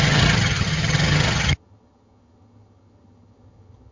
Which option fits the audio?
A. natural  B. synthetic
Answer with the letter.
B